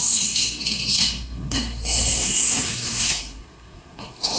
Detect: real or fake fake